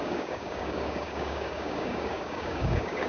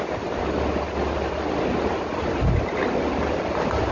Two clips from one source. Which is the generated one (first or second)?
first